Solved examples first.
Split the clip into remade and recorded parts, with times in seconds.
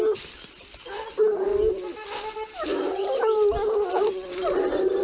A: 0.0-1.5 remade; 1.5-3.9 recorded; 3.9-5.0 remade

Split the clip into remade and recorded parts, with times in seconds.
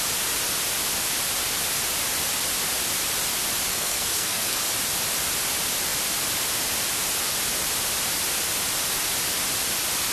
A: 0.0-3.7 recorded; 3.7-4.6 remade; 4.6-10.1 recorded